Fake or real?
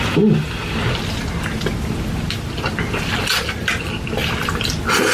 real